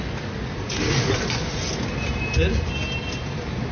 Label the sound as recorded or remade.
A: recorded